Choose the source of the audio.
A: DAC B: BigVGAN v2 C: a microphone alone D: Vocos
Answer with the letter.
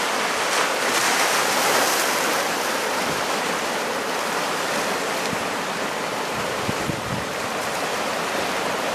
B